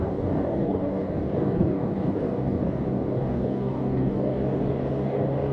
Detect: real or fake fake